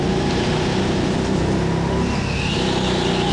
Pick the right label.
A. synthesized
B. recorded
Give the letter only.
B